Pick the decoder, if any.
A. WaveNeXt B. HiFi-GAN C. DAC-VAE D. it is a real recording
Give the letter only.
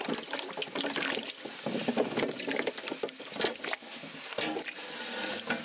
D